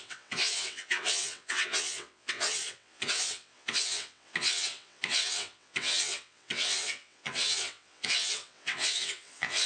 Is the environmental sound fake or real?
fake